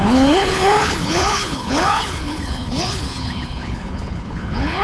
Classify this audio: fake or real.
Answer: fake